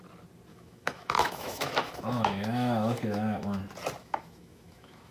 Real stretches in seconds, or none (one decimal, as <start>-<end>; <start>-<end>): 0.0-0.5; 3.6-4.0